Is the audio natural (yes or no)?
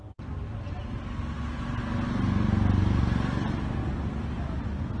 yes